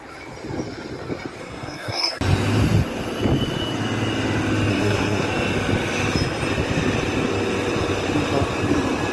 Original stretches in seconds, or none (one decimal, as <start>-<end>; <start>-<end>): 0.0-1.4; 2.2-4.7; 5.3-9.1